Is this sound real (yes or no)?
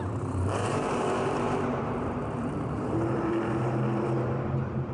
no